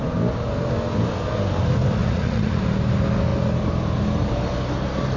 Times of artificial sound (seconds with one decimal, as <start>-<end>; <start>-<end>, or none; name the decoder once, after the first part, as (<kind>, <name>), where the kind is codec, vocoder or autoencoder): 2.0-2.6 (vocoder, Vocos)